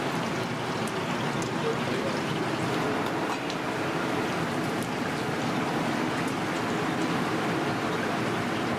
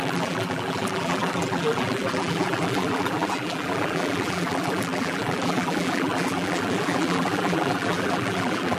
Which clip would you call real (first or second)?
first